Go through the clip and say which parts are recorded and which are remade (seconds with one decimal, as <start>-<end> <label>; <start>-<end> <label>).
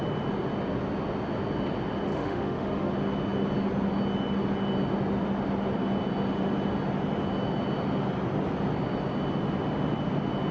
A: 0.0-2.1 recorded; 2.1-2.9 remade; 2.9-10.5 recorded